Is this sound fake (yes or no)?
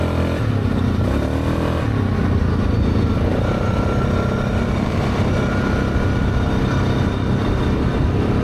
no